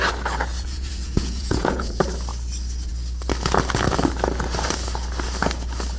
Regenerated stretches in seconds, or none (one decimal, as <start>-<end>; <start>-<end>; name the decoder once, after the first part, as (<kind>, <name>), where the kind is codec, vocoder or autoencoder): 0.5-2.0 (vocoder, Vocos)